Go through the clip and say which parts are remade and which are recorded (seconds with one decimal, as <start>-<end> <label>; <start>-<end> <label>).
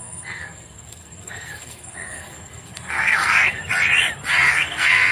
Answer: 0.0-3.6 remade; 3.6-4.5 recorded; 4.5-5.1 remade